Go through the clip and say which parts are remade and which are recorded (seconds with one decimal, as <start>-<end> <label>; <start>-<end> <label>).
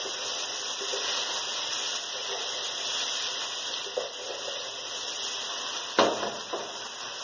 0.0-7.2 recorded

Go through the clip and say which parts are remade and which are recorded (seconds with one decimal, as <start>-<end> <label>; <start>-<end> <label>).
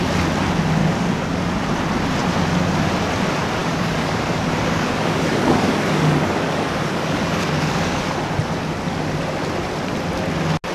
0.0-0.8 recorded; 0.8-1.4 remade; 1.4-3.6 recorded; 3.6-8.1 remade; 8.1-10.7 recorded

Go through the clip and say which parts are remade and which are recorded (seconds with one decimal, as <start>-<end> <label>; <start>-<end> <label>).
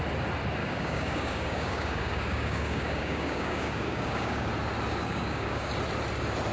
0.0-0.6 recorded; 0.6-4.5 remade; 4.5-5.0 recorded; 5.0-5.7 remade; 5.7-6.5 recorded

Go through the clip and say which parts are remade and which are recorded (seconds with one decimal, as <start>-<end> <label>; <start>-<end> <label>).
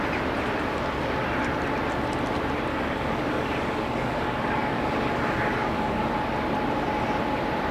0.0-2.7 recorded; 2.7-6.1 remade; 6.1-7.7 recorded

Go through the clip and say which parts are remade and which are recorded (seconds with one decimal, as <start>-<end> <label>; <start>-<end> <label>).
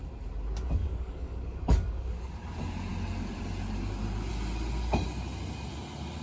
0.0-0.8 recorded; 0.8-2.3 remade; 2.3-6.2 recorded